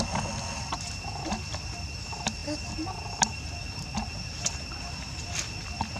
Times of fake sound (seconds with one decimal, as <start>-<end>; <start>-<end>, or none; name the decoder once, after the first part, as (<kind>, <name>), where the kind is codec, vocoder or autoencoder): none